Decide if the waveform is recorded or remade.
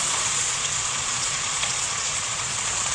remade